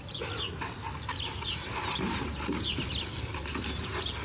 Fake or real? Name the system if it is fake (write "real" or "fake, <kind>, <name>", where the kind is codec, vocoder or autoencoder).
real